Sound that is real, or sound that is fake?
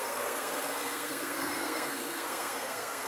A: fake